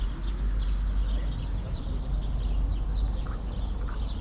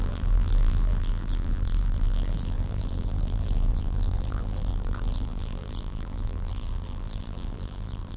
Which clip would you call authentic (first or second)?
first